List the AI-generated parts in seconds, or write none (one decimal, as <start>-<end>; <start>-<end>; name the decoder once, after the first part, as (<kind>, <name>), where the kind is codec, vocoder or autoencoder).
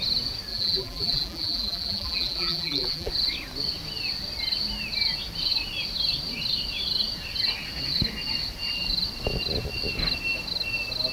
0.5-3.1 (vocoder, BigVGAN v2)